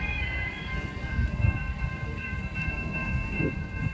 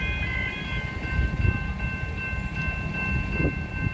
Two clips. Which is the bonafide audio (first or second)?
second